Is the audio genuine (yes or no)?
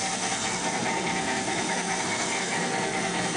no